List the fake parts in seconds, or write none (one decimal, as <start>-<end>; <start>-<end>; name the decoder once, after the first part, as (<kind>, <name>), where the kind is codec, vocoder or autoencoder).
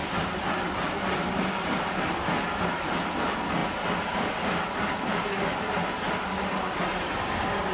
none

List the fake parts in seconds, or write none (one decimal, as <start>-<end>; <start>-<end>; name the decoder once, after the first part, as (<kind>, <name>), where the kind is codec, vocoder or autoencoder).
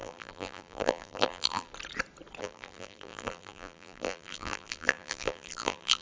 0.0-1.7 (vocoder, BigVGAN v2); 2.4-6.0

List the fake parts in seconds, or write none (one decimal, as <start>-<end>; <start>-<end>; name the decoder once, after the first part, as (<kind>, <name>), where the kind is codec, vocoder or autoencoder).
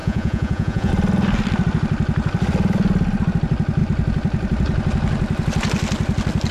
0.0-0.9 (vocoder, Vocos)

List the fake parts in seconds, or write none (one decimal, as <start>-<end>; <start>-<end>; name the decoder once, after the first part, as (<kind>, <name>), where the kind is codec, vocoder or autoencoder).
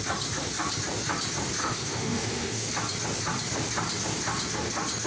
1.6-2.7 (autoencoder, DAC-VAE)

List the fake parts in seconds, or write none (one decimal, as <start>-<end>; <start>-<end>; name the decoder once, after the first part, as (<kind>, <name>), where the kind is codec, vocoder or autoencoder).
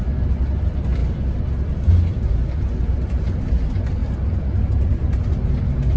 none